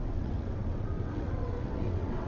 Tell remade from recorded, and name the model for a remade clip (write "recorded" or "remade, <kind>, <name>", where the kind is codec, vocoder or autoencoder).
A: remade, vocoder, WaveNeXt